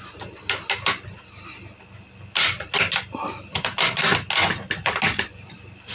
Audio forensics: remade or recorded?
recorded